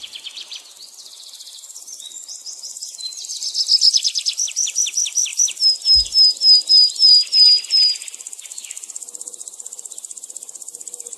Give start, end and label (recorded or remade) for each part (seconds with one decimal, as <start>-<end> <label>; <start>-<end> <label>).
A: 0.0-5.3 remade; 5.3-6.7 recorded; 6.7-11.2 remade